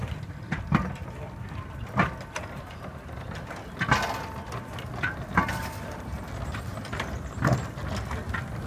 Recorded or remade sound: recorded